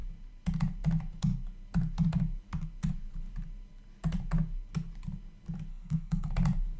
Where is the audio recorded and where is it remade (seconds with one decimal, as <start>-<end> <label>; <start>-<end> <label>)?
0.0-5.7 recorded; 5.7-6.3 remade; 6.3-6.8 recorded